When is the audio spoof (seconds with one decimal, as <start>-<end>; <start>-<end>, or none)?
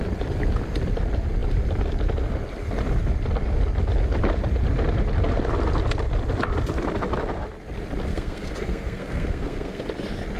8.1-9.9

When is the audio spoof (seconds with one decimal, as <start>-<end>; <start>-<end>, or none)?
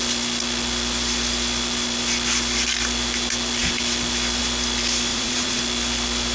5.1-5.6